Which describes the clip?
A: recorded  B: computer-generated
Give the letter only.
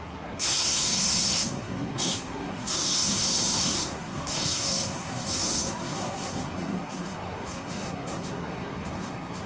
B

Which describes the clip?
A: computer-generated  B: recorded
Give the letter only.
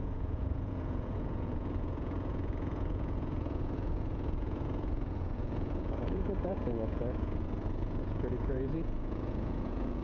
A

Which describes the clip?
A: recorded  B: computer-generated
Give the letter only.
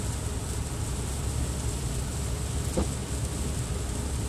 A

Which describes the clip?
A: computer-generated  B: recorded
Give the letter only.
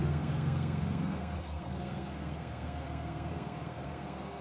A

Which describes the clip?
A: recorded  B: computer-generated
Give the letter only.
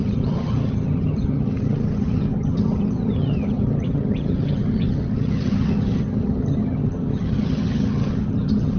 B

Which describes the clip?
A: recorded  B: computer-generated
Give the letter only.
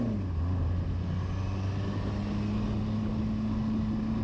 A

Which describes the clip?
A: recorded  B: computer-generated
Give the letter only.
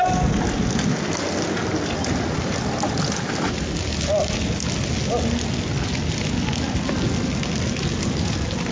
A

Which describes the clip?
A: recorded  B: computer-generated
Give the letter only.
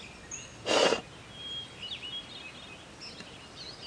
A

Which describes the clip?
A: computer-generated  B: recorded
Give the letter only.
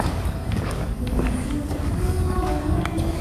A